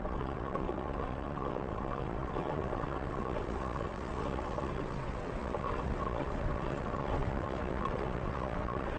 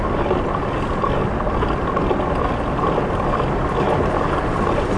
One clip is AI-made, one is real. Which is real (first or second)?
second